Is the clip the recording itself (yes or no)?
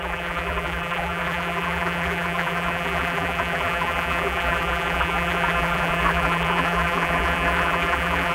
no